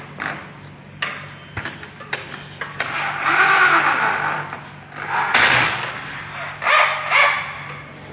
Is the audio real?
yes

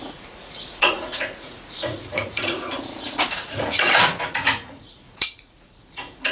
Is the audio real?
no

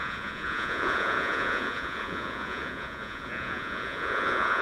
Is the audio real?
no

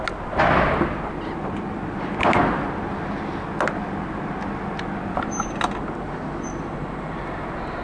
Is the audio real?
yes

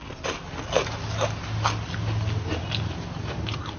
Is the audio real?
yes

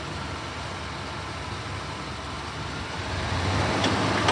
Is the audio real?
yes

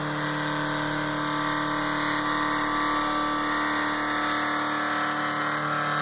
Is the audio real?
yes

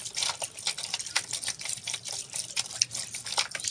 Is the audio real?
yes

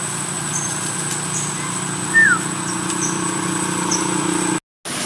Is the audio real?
yes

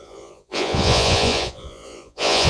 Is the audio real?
no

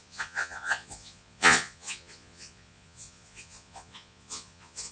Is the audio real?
no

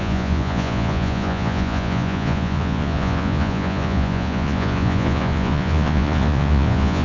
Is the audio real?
no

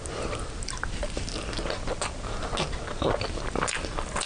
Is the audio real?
yes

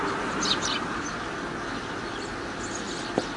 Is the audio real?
yes